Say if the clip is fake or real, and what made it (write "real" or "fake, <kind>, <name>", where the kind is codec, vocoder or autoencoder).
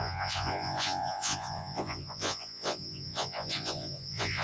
fake, vocoder, Vocos